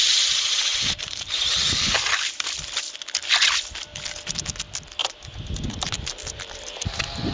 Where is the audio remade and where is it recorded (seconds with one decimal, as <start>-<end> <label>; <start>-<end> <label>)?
0.0-0.7 recorded; 0.7-2.6 remade; 2.6-5.0 recorded; 5.0-7.3 remade